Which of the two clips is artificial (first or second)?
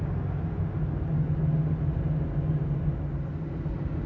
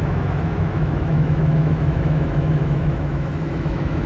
second